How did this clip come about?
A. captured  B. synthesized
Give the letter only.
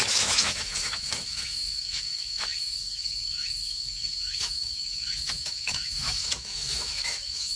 B